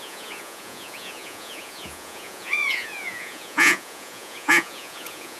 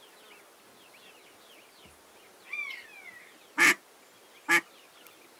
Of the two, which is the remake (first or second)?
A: first